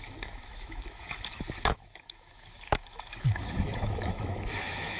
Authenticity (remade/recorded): remade